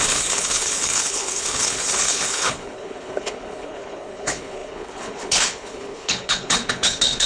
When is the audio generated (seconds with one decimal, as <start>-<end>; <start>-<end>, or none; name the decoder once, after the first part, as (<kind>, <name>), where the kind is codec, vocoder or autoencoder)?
0.0-7.3 (codec, HILCodec)